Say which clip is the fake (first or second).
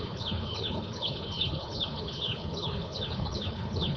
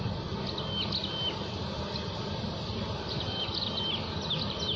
first